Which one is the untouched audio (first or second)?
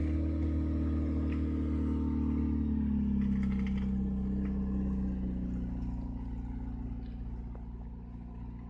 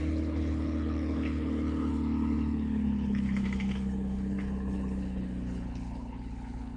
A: first